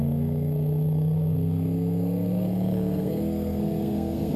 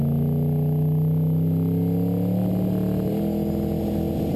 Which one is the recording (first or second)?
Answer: second